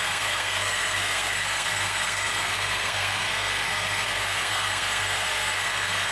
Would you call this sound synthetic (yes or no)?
yes